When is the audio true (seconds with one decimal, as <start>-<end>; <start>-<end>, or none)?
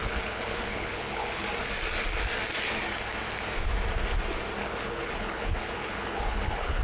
1.4-4.6